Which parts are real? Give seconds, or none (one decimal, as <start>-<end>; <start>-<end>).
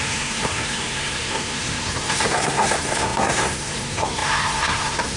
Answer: none